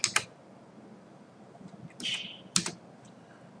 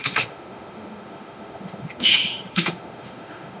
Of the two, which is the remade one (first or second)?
second